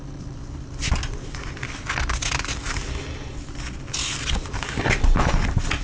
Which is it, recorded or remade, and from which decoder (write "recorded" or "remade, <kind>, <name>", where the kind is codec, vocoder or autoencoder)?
recorded